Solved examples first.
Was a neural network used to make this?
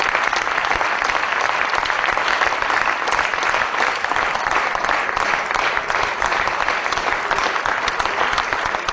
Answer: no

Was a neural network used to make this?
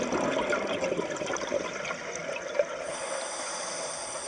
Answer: no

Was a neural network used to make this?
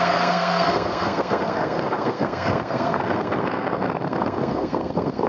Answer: yes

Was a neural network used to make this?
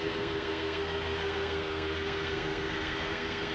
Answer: yes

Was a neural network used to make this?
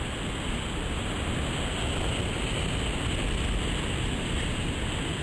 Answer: no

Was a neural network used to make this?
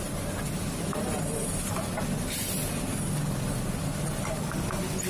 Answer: no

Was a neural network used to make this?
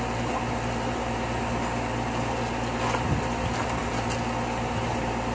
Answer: no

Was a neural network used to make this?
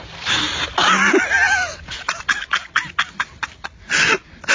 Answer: no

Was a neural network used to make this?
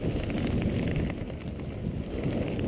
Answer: no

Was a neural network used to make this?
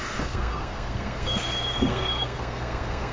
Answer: yes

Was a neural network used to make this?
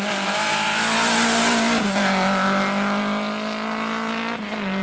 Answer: no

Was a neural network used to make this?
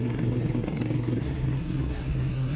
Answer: yes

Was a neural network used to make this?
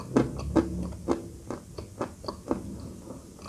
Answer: no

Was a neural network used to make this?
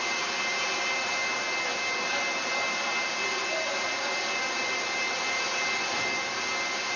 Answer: no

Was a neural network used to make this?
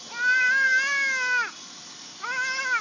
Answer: no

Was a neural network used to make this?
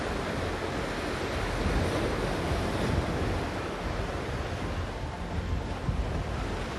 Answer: no